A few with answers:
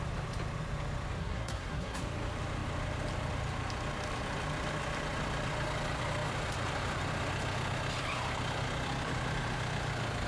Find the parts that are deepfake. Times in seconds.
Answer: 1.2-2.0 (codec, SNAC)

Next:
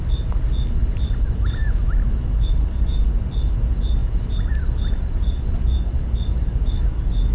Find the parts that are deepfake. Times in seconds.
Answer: 0.8-3.1 (vocoder, BigVGAN v2); 4.0-6.8